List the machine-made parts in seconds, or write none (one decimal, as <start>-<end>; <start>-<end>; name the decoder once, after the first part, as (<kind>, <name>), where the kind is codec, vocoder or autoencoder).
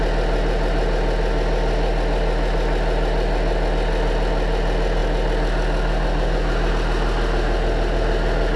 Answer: none